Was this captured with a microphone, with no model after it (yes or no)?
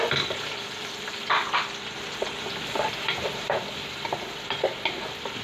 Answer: yes